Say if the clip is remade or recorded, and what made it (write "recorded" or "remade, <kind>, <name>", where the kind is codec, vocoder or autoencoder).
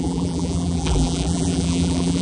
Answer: remade, vocoder, BigVGAN v2